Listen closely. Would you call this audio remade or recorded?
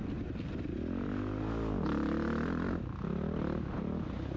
recorded